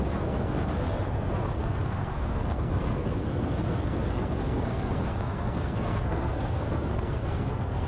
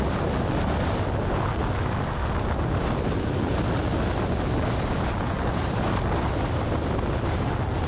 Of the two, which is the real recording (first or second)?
second